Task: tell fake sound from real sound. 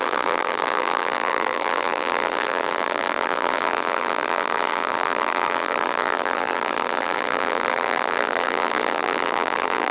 fake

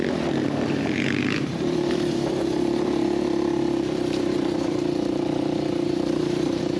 fake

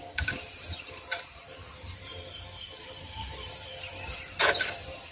fake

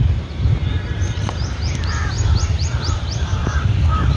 fake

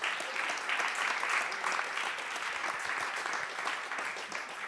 real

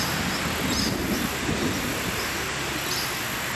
real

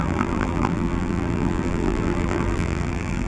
fake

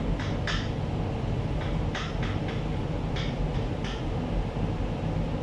real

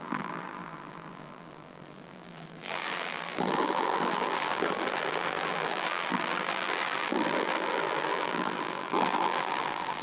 fake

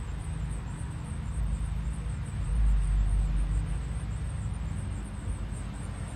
real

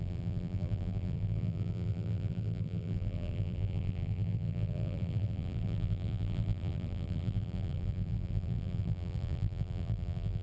fake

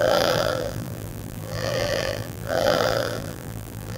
fake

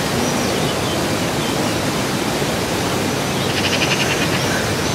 real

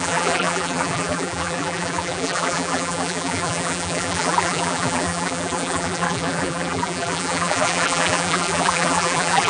fake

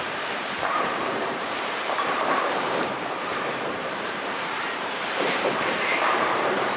fake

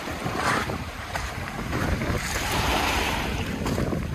fake